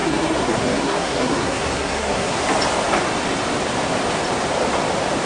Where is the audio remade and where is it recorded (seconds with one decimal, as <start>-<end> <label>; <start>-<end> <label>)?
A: 0.0-2.4 remade; 2.4-5.3 recorded